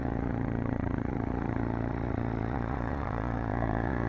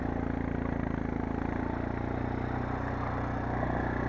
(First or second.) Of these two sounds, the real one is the second